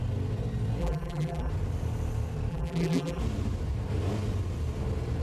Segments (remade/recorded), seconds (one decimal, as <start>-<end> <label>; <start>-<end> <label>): 0.0-0.8 recorded; 0.8-1.5 remade; 1.5-2.5 recorded; 2.5-3.2 remade; 3.2-5.2 recorded